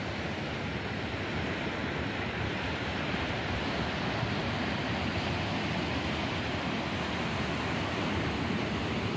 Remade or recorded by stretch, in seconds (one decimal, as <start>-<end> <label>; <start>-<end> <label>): 0.0-1.8 recorded; 1.8-5.5 remade; 5.5-9.2 recorded